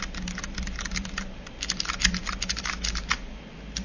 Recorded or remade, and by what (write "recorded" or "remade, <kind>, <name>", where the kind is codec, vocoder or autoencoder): recorded